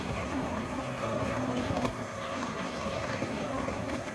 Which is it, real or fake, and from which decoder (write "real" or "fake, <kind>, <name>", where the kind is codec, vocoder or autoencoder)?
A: fake, codec, SNAC